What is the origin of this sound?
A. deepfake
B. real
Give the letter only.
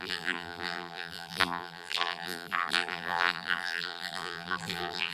A